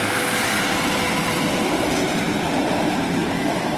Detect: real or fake fake